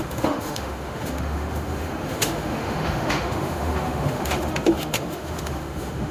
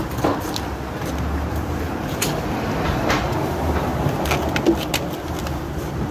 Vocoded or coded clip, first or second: first